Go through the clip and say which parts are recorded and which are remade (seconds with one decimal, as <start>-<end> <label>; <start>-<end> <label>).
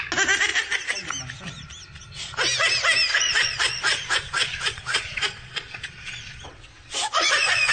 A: 0.0-3.1 recorded; 3.1-7.7 remade